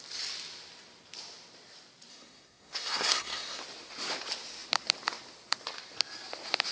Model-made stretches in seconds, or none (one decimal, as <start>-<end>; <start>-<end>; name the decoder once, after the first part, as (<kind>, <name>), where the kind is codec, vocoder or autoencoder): 2.1-3.6 (codec, SNAC)